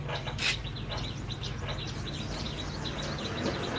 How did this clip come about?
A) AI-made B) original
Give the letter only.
B